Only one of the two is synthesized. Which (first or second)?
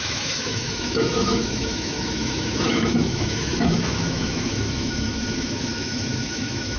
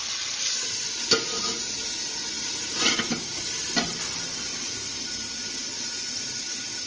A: first